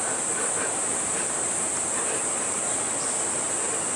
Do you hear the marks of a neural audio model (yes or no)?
no